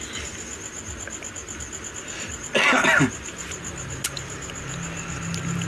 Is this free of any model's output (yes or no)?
yes